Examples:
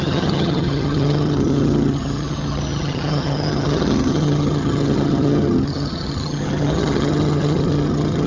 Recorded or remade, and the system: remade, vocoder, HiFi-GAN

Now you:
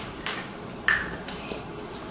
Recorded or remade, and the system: recorded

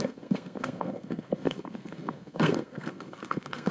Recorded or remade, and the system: remade, codec, SNAC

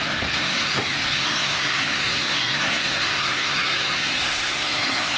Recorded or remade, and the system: remade, codec, SNAC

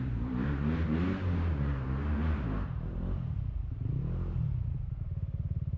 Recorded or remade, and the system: remade, vocoder, BigVGAN v2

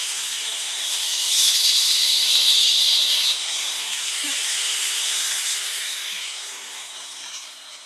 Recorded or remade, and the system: remade, codec, SNAC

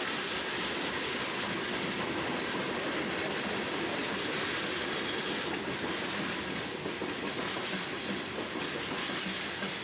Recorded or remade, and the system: recorded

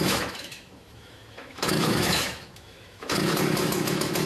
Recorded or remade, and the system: remade, autoencoder, DAC-VAE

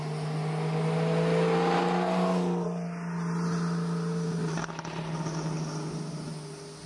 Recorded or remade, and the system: recorded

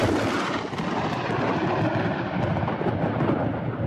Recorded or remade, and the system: recorded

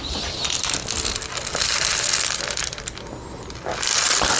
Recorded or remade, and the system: recorded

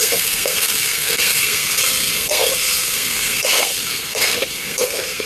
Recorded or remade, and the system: remade, codec, SNAC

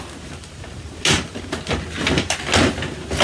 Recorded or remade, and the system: recorded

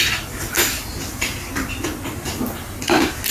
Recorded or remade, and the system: recorded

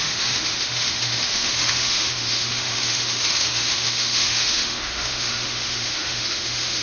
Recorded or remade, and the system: remade, autoencoder, DAC-VAE